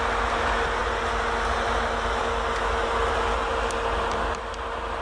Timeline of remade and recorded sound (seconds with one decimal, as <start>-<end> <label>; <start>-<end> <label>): 0.0-5.0 recorded